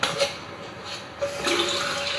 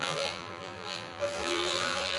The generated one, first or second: second